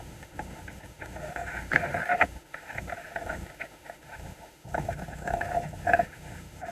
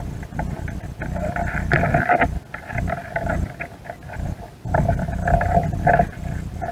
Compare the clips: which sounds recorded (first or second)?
second